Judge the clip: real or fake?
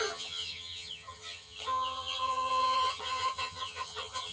fake